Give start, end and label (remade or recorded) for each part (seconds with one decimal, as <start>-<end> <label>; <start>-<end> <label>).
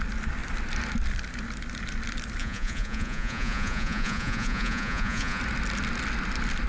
0.0-2.4 recorded; 2.4-5.4 remade; 5.4-6.7 recorded